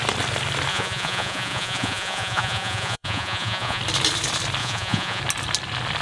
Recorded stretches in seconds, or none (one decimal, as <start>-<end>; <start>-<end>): 0.0-0.7; 3.8-4.6; 5.2-6.0